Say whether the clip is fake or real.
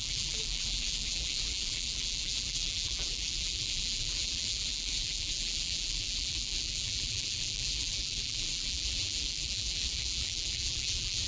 fake